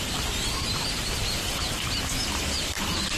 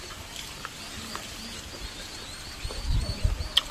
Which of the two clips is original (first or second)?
second